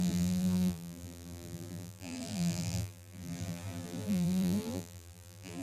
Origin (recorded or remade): remade